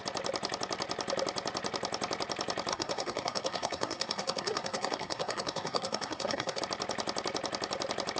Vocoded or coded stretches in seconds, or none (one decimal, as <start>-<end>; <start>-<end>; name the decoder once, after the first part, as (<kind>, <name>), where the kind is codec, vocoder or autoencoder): 2.7-6.6 (codec, SNAC)